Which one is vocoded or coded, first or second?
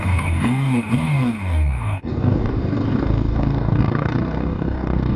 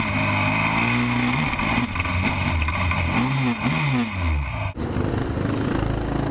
first